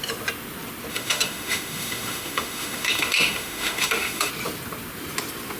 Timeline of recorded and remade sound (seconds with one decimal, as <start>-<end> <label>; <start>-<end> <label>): 0.0-0.9 recorded; 0.9-4.3 remade; 4.3-5.6 recorded

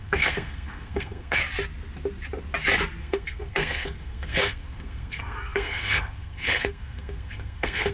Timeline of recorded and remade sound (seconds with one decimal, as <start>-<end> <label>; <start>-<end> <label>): 0.0-1.4 remade; 1.4-3.0 recorded; 3.0-7.9 remade